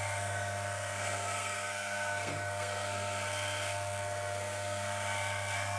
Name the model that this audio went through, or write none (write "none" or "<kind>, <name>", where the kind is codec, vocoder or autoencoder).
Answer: codec, SNAC